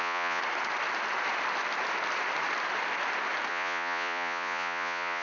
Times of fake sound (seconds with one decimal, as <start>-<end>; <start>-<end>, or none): 0.0-0.4; 3.5-5.2